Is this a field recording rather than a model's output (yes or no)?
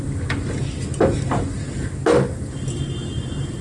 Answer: yes